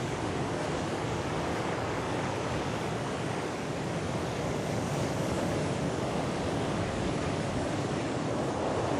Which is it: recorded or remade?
remade